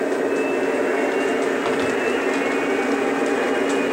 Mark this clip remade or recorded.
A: recorded